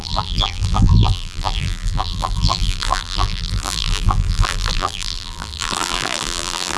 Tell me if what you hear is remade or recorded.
remade